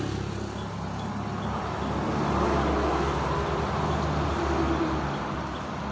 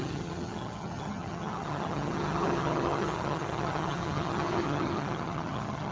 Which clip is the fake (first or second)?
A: second